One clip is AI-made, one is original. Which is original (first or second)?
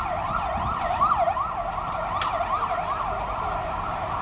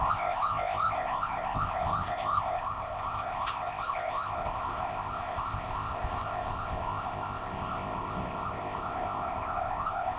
first